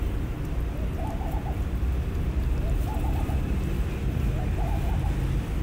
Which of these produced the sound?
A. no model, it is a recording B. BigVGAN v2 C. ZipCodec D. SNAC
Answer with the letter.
B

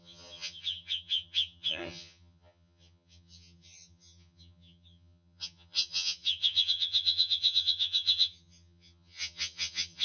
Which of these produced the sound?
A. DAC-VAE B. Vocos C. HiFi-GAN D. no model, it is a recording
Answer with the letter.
C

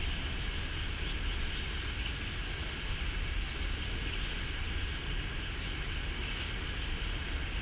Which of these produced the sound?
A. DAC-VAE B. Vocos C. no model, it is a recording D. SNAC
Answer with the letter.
C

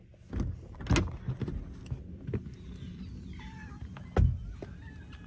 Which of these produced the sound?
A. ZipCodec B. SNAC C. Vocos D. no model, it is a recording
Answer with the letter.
D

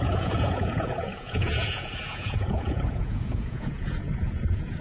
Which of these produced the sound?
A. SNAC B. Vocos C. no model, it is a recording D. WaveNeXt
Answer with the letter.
B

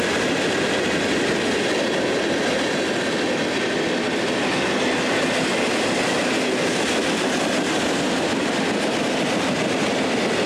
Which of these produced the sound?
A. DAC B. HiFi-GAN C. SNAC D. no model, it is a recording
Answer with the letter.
D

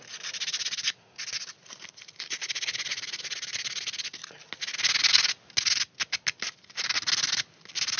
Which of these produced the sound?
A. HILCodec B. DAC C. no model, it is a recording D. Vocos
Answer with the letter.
C